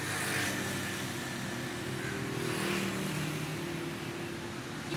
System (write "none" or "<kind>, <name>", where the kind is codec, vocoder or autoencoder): none